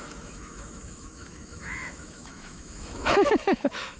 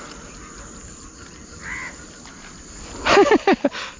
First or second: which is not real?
first